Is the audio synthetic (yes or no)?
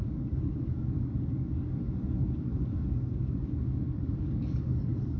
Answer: yes